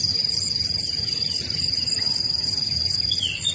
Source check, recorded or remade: remade